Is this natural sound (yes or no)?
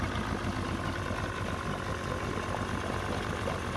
yes